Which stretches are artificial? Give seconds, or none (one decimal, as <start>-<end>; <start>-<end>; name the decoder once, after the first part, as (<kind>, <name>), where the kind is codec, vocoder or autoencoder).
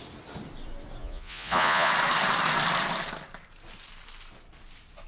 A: 1.0-1.9 (vocoder, Vocos)